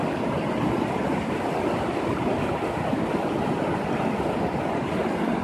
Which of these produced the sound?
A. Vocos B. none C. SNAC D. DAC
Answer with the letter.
B